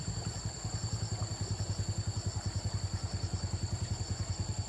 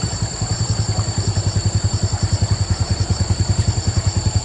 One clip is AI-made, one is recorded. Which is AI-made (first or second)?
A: second